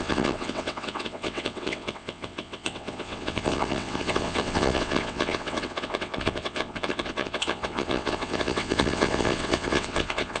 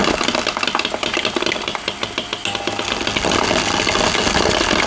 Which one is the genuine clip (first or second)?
second